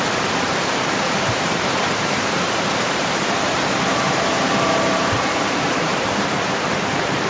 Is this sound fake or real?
fake